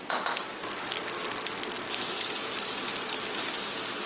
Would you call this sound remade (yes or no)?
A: no